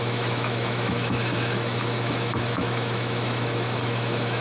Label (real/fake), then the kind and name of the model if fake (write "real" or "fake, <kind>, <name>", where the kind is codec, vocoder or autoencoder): fake, autoencoder, DAC-VAE